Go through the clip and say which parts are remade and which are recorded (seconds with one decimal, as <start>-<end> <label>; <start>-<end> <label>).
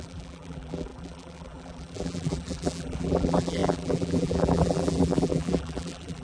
0.0-6.2 remade